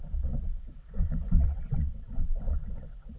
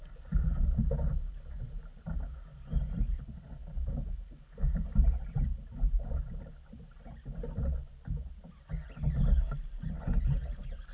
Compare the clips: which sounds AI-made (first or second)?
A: first